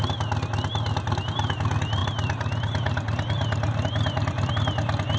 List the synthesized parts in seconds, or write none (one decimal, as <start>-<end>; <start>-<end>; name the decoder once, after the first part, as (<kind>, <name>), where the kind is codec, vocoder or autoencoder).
2.0-4.5 (vocoder, BigVGAN v2)